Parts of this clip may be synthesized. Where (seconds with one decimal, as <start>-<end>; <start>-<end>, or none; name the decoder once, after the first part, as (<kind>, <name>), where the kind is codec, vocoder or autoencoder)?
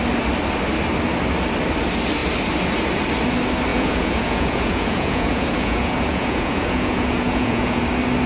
3.7-7.8 (vocoder, Vocos)